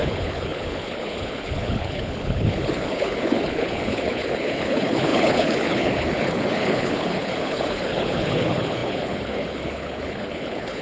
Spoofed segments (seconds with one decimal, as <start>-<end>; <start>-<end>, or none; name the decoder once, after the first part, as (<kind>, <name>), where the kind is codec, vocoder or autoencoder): 0.0-10.8 (codec, HILCodec)